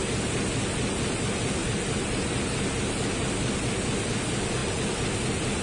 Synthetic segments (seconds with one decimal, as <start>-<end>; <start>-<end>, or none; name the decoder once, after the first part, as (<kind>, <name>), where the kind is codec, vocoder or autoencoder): 1.6-2.4 (vocoder, BigVGAN v2)